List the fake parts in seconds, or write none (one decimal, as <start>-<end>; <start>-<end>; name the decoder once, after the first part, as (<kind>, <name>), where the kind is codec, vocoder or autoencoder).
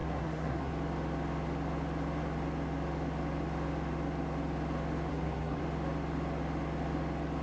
0.0-0.7 (codec, SNAC); 5.1-5.6